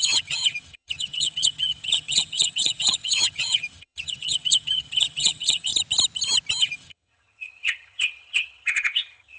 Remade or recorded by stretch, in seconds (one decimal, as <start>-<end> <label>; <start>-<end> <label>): 0.0-5.7 remade; 5.7-6.6 recorded; 6.6-9.4 remade